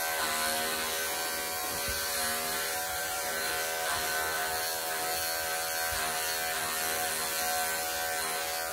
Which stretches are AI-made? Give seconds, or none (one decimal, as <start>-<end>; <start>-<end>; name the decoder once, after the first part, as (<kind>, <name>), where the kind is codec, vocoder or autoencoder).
1.6-3.5 (vocoder, BigVGAN v2)